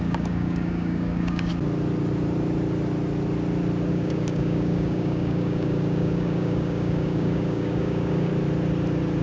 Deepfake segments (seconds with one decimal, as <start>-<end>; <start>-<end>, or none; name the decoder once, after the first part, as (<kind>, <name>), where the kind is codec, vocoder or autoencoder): 0.0-1.5 (codec, DAC); 3.9-8.3